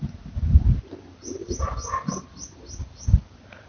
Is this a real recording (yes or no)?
yes